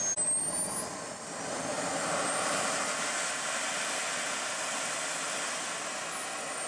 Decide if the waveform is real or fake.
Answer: real